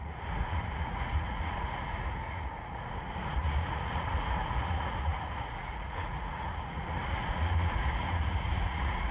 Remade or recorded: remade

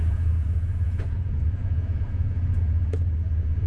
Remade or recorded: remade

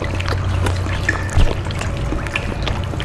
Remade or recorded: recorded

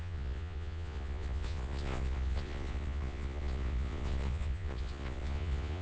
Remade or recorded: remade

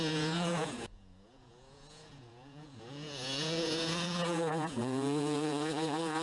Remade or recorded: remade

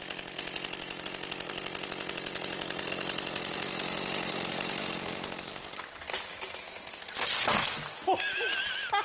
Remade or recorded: recorded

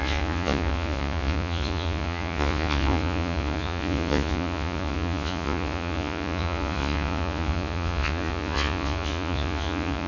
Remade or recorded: remade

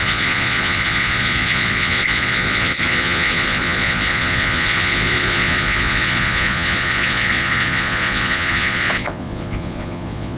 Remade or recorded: remade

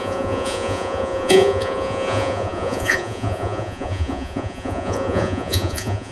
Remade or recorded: remade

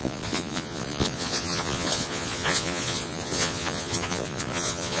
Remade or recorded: remade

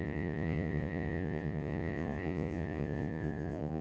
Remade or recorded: remade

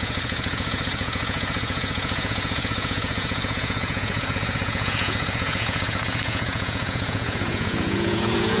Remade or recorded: remade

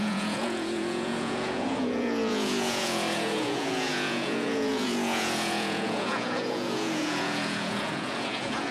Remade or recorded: remade